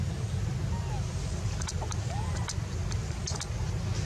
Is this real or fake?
real